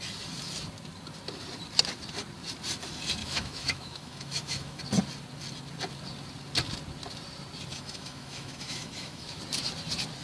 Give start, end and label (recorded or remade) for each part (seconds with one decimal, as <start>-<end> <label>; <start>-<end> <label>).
0.0-3.2 recorded; 3.2-4.8 remade; 4.8-7.7 recorded; 7.7-9.4 remade; 9.4-10.2 recorded